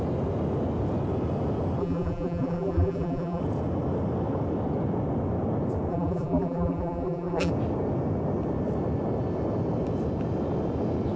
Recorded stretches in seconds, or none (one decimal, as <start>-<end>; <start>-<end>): 0.0-1.8; 3.4-5.9; 7.5-11.2